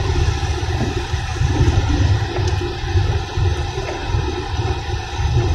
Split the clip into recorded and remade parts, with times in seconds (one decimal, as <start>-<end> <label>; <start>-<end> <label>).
0.0-5.5 recorded